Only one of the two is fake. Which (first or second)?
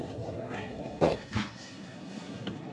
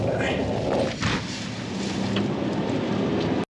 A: first